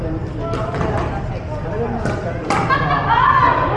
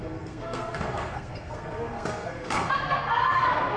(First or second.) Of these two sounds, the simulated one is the second